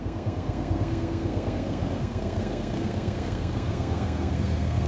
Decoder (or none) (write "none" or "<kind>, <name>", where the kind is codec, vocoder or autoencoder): codec, SNAC